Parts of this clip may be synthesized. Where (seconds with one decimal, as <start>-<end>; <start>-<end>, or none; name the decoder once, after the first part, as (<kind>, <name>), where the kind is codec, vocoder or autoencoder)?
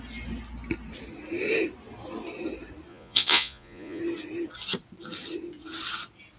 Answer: 2.9-4.0 (vocoder, Vocos)